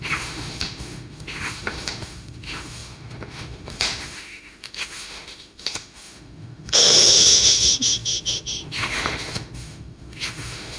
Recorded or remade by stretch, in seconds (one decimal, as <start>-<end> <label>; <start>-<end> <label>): 0.0-10.8 remade